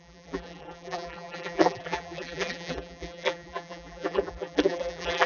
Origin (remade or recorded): remade